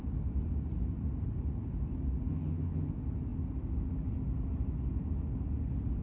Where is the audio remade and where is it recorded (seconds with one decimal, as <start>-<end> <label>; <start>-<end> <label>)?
0.0-2.3 recorded; 2.3-2.9 remade; 2.9-6.0 recorded